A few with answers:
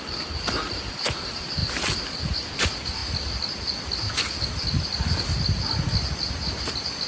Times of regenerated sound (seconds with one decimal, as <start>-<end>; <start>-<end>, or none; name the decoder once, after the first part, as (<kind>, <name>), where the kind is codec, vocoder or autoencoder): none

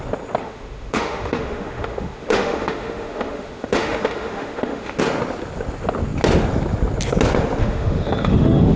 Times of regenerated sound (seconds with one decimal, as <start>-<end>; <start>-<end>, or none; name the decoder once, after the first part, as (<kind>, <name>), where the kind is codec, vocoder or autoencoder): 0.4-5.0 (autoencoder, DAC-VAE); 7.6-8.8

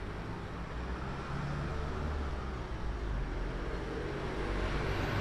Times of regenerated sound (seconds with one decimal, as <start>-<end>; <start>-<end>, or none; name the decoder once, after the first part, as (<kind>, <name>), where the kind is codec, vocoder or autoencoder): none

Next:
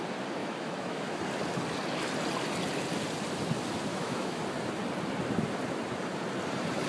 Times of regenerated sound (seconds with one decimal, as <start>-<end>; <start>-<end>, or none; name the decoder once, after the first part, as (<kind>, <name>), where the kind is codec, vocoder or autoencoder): 0.4-1.2 (autoencoder, DAC-VAE); 3.9-4.4

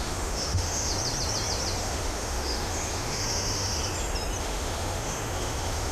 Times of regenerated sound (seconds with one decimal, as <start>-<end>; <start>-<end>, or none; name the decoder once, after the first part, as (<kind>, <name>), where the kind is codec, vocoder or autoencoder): 0.0-0.9 (autoencoder, DAC-VAE); 1.8-3.8; 4.4-5.9

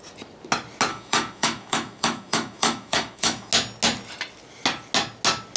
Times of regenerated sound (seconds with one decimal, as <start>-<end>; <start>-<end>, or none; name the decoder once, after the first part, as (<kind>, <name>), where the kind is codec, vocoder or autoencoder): 0.9-3.5 (autoencoder, DAC-VAE)